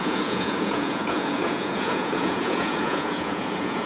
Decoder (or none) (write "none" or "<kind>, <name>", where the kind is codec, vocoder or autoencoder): vocoder, Vocos